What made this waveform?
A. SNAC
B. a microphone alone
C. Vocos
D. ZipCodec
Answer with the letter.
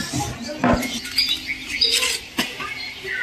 B